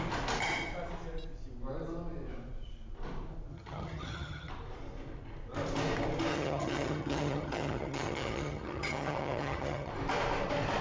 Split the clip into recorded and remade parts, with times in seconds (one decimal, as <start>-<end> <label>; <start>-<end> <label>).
0.0-3.5 recorded; 3.5-4.5 remade; 4.5-6.3 recorded; 6.3-9.9 remade; 9.9-10.8 recorded